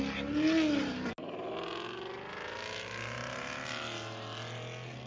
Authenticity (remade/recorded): recorded